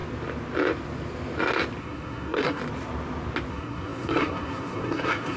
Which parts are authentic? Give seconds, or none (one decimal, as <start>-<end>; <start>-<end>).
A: 0.0-1.8; 2.6-3.5